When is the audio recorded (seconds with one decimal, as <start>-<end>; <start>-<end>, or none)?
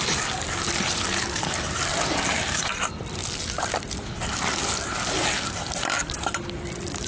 1.9-2.6; 3.2-5.8